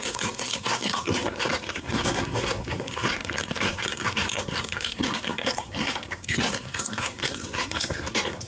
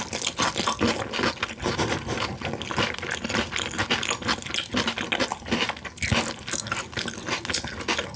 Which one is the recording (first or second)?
second